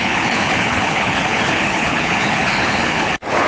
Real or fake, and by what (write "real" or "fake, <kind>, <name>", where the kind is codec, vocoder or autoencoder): fake, codec, HILCodec